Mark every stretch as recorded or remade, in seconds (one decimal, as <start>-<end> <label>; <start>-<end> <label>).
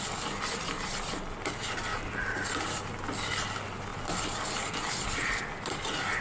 0.0-1.9 recorded; 1.9-3.0 remade; 3.0-3.9 recorded; 3.9-5.4 remade; 5.4-6.2 recorded